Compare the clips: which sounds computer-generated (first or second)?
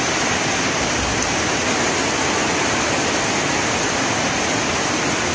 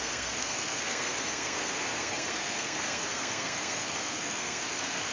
second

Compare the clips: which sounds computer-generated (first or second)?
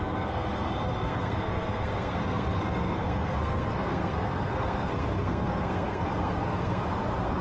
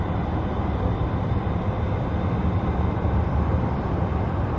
first